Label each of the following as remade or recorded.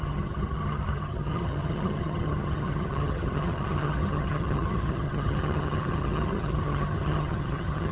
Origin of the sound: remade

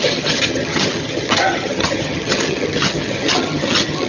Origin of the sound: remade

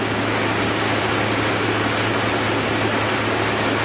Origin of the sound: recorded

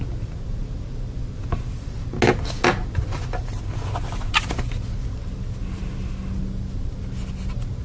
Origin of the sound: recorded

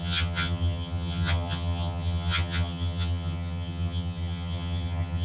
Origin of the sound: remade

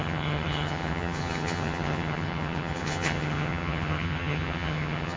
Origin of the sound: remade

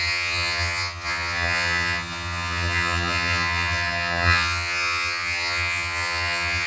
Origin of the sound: remade